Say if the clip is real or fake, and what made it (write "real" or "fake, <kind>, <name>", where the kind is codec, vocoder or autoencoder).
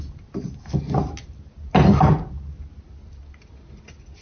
real